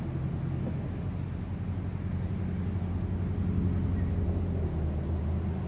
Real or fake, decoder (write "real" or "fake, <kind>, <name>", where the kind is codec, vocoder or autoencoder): real